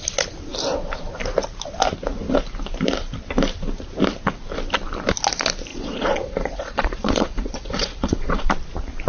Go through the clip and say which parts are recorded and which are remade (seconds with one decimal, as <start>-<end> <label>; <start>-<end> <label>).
0.0-5.7 recorded; 5.7-8.5 remade; 8.5-9.1 recorded